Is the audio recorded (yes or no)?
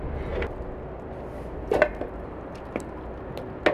yes